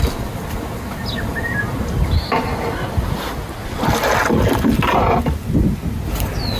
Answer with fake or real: real